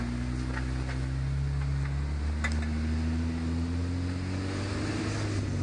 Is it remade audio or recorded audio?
recorded